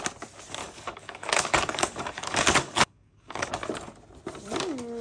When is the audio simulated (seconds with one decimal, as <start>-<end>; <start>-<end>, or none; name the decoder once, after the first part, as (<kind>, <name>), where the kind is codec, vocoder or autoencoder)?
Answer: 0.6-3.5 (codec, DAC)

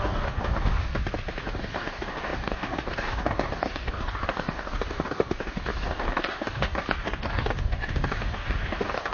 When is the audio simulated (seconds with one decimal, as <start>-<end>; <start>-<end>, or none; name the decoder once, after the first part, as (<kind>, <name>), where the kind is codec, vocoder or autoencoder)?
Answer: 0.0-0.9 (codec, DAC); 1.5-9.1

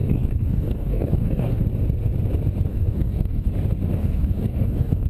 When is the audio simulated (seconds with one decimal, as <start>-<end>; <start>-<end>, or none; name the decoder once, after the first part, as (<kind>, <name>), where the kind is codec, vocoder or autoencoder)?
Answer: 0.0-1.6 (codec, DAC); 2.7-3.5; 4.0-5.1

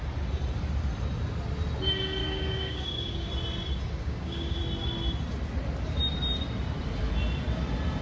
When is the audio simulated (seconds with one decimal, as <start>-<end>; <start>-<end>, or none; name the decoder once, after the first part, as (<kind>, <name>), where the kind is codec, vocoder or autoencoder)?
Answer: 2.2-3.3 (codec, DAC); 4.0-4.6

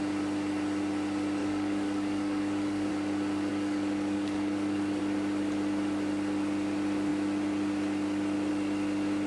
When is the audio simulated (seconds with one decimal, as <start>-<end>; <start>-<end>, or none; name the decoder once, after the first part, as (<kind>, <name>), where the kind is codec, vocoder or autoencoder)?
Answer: 1.4-2.9 (codec, DAC); 3.5-5.0

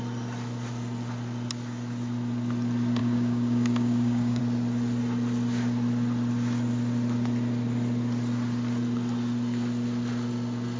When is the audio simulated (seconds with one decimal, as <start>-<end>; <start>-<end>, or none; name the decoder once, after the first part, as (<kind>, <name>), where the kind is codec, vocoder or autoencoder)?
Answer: 3.0-4.4 (codec, DAC)

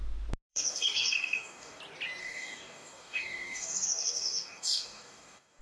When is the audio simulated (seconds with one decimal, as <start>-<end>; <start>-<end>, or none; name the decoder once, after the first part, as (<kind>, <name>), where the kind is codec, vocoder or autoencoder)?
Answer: 0.5-1.8 (codec, DAC); 2.2-5.6